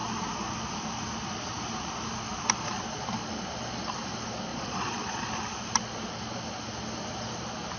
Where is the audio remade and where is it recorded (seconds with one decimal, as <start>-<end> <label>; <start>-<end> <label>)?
0.0-4.5 recorded; 4.5-5.2 remade; 5.2-7.8 recorded